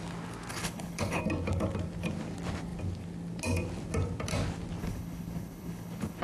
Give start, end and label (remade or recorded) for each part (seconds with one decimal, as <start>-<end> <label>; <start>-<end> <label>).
0.0-0.5 recorded; 0.5-1.2 remade; 1.2-4.8 recorded; 4.8-6.2 remade